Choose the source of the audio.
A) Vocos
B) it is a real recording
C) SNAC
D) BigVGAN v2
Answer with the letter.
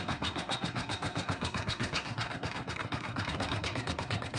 C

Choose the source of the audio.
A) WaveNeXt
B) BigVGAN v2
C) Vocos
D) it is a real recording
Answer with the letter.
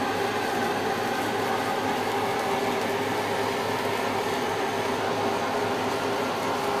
D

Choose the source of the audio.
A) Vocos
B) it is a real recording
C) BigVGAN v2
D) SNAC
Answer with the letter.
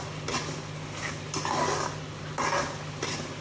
B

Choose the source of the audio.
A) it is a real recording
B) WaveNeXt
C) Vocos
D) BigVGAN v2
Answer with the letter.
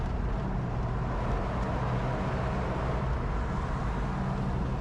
A